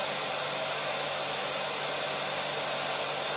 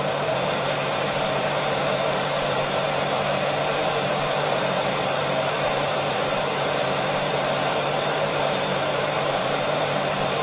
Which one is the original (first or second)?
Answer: first